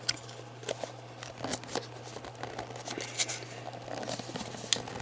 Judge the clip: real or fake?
real